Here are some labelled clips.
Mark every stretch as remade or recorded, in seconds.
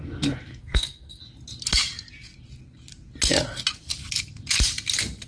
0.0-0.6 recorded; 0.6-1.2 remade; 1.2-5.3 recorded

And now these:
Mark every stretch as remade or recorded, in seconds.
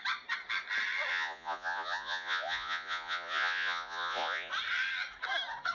0.0-1.1 recorded; 1.1-4.5 remade; 4.5-5.7 recorded